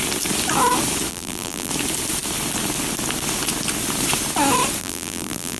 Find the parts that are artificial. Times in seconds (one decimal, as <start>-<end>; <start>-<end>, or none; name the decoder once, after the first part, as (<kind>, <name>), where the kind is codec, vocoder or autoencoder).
1.1-1.7 (vocoder, BigVGAN v2); 4.8-5.6